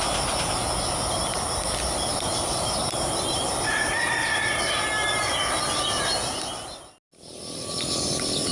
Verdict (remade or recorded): recorded